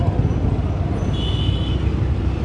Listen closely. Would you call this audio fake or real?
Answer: real